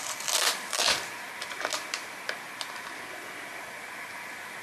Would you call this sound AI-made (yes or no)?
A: no